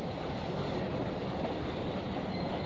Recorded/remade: recorded